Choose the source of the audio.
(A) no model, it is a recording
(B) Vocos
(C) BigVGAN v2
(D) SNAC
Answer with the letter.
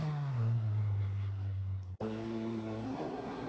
D